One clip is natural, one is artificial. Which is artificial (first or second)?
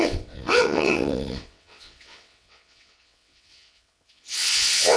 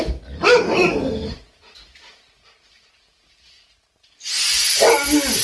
first